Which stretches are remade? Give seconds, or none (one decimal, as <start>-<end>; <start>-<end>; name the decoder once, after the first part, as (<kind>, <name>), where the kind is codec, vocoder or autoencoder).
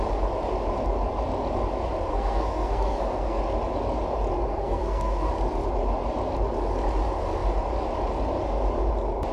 2.1-3.4 (codec, SNAC); 4.5-5.3